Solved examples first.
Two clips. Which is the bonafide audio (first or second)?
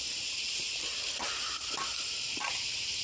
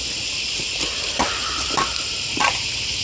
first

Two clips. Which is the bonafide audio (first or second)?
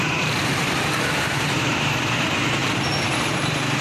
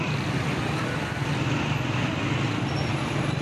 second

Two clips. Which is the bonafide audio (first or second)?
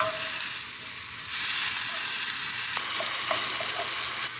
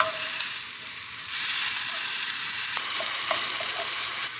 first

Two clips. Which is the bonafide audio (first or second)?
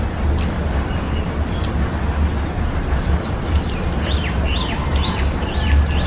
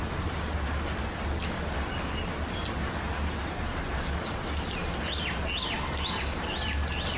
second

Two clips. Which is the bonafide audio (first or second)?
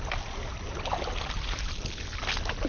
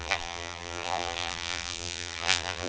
first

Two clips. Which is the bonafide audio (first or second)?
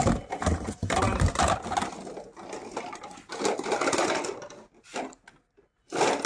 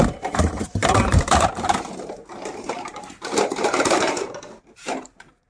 first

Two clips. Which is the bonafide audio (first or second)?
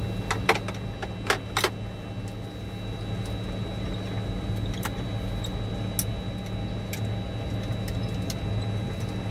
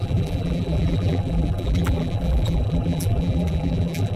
first